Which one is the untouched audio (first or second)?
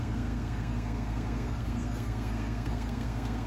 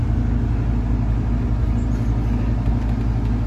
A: second